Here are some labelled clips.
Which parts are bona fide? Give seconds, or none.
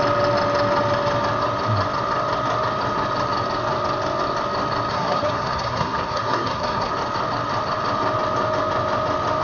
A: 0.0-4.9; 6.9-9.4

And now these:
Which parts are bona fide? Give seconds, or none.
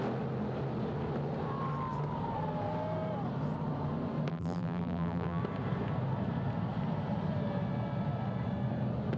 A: 0.0-4.3; 5.4-9.2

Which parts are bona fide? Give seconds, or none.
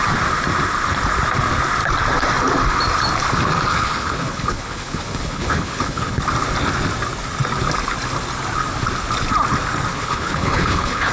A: 0.0-3.7; 6.2-9.9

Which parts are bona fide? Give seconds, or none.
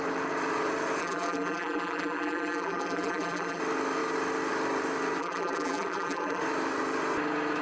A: 0.0-1.0; 3.6-5.2; 6.4-7.6